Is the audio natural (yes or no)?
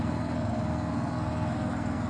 no